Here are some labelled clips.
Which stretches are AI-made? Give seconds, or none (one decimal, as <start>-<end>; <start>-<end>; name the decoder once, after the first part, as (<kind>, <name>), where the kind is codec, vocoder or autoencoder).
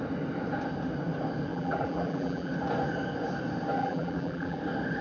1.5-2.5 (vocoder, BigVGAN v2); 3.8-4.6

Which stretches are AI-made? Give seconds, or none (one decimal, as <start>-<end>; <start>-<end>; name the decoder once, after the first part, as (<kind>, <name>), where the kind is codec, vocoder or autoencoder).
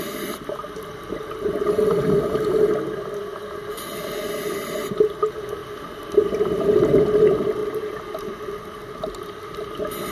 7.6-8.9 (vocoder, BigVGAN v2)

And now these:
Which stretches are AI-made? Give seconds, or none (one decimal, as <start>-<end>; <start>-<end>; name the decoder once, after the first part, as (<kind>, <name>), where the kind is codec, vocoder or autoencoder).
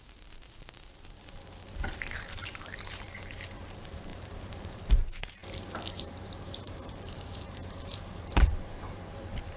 0.0-9.6 (vocoder, BigVGAN v2)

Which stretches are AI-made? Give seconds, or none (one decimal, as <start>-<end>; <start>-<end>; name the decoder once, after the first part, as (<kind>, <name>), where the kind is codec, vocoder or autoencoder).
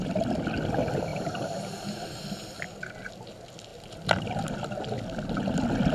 1.1-2.6 (vocoder, BigVGAN v2)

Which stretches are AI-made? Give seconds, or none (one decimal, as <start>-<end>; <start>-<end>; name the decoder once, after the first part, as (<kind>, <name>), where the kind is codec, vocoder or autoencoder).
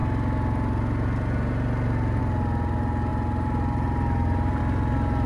3.1-4.6 (vocoder, BigVGAN v2)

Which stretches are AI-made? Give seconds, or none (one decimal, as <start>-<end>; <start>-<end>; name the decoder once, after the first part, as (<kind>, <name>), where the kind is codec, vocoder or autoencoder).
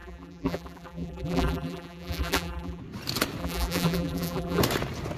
0.0-2.8 (vocoder, BigVGAN v2); 3.4-4.6